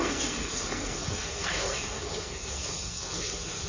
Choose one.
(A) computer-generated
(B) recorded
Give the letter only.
A